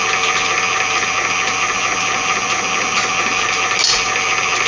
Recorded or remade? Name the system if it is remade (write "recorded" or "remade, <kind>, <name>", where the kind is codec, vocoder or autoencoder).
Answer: recorded